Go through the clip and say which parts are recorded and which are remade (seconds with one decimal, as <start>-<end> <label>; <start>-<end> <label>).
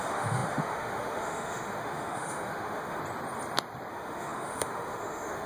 0.0-3.0 remade; 3.0-3.9 recorded; 3.9-5.5 remade